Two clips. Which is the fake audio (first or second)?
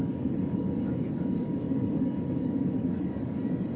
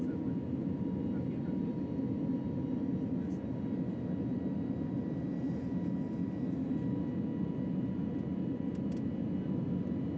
first